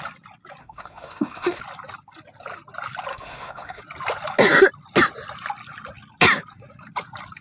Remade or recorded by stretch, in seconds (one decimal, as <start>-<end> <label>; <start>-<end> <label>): 0.0-0.6 recorded; 0.6-1.6 remade; 1.6-3.1 recorded; 3.1-3.8 remade; 3.8-7.4 recorded